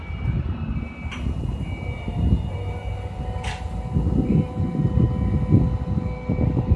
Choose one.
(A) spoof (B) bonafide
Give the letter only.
B